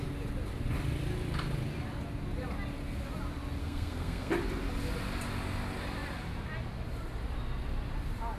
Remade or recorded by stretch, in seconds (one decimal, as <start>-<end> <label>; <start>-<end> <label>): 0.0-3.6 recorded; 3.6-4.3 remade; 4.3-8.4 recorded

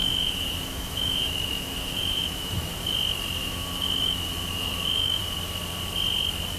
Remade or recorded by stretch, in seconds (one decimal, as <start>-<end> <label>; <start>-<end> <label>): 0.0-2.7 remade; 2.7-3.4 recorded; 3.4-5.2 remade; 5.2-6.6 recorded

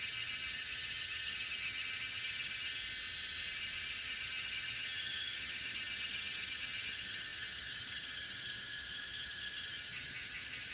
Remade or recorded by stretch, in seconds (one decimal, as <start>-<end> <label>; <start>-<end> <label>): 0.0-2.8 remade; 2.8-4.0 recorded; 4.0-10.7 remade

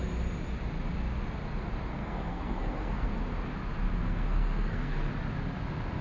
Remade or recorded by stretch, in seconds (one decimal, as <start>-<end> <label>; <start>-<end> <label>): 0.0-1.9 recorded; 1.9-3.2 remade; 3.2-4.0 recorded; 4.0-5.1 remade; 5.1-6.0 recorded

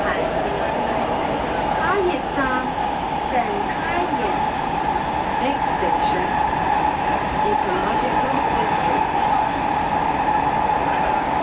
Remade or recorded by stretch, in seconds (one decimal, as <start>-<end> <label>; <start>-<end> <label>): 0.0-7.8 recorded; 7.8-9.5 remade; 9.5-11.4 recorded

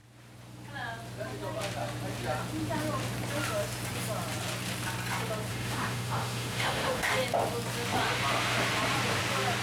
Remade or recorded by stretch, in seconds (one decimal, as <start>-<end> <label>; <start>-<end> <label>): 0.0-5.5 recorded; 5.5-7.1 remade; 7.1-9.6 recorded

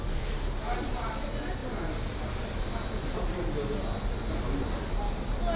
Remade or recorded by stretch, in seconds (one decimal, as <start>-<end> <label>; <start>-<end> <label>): 0.0-5.6 recorded

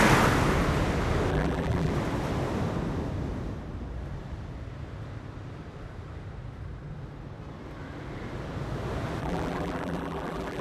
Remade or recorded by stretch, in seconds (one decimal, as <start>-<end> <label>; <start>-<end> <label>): 0.0-1.3 recorded; 1.3-1.9 remade; 1.9-9.2 recorded; 9.2-10.6 remade